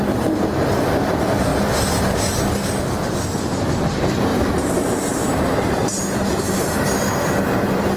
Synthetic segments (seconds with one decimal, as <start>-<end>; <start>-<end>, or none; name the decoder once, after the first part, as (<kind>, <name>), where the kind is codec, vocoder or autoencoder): 4.3-6.8 (vocoder, BigVGAN v2)